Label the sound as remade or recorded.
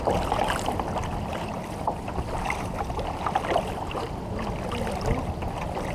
recorded